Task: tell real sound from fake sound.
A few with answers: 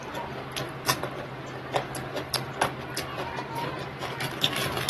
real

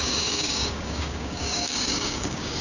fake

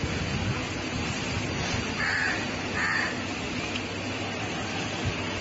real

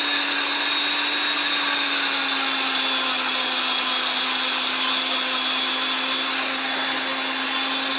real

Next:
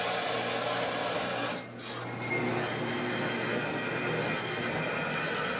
real